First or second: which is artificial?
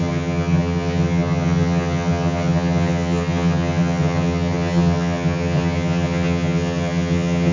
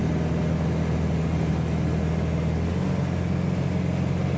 first